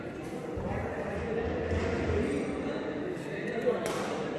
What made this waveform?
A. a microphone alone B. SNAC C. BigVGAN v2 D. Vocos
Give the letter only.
A